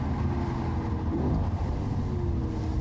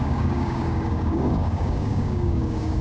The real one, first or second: first